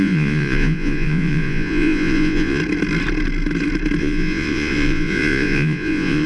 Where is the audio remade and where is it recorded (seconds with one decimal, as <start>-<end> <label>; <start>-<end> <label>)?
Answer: 0.0-2.6 remade; 2.6-4.0 recorded; 4.0-6.3 remade